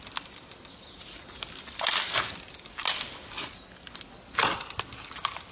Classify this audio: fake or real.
real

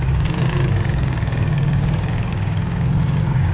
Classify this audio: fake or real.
fake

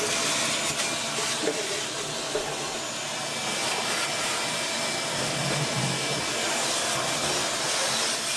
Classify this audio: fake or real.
real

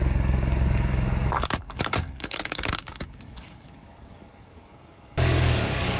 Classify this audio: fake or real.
fake